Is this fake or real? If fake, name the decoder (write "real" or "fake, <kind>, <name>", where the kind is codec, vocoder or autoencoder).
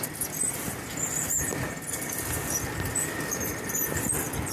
real